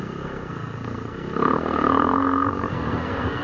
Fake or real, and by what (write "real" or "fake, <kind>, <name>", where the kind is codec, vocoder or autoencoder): fake, codec, SNAC